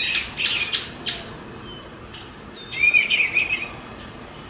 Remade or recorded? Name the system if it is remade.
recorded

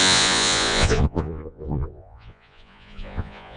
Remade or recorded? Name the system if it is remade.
remade, vocoder, Vocos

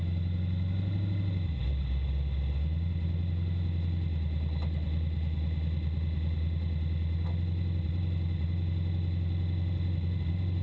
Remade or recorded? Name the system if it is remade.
recorded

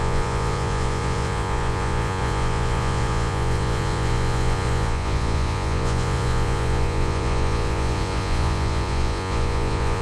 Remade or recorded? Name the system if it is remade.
remade, vocoder, Vocos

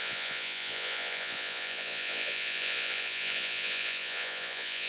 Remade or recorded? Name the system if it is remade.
remade, vocoder, Vocos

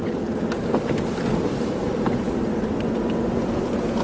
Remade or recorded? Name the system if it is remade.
recorded